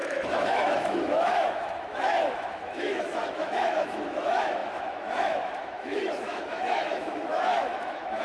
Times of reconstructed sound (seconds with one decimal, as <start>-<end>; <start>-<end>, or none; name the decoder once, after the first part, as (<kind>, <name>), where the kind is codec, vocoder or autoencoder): 0.0-8.2 (autoencoder, DAC-VAE)